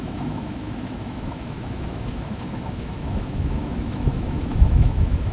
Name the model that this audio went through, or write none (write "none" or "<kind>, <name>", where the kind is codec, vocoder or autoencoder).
autoencoder, DAC-VAE